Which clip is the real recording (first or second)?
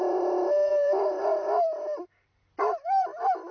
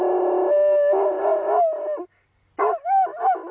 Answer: second